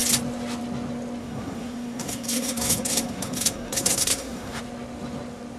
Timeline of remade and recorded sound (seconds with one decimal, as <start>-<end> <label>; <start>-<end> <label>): 0.0-1.2 recorded; 1.2-4.6 remade; 4.6-5.6 recorded